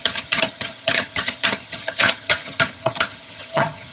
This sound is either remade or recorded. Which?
remade